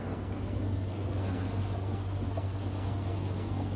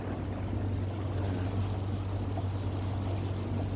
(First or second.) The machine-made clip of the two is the first